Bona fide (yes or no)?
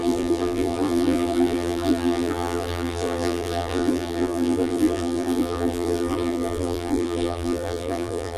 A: no